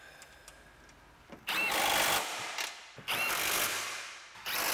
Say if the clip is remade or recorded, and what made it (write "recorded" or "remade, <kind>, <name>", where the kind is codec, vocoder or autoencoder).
recorded